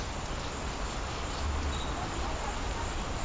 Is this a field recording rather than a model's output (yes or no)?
yes